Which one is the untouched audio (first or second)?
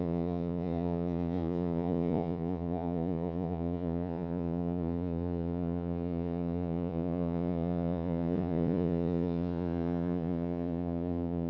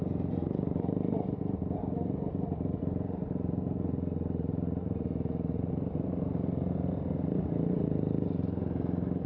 second